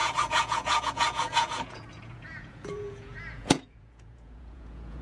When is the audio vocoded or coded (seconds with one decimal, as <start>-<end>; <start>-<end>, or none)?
0.0-5.0